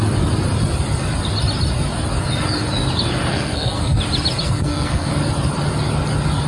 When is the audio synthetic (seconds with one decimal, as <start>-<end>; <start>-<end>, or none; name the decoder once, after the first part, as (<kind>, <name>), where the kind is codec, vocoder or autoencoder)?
3.3-4.0 (codec, SNAC); 4.4-5.1